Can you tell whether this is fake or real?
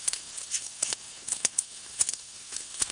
fake